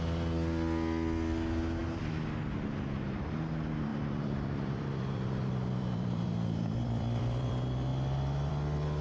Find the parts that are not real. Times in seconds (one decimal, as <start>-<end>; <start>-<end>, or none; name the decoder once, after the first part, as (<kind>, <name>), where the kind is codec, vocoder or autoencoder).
3.9-7.5 (vocoder, BigVGAN v2)